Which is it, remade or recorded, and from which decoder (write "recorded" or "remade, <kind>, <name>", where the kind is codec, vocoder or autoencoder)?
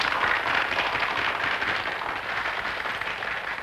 recorded